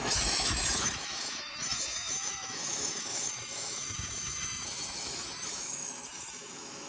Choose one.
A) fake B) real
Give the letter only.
A